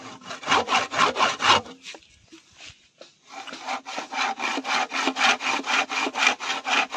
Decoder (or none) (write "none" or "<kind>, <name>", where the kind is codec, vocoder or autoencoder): none